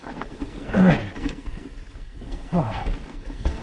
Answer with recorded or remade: remade